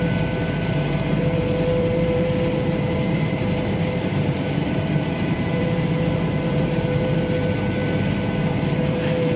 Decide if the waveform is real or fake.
fake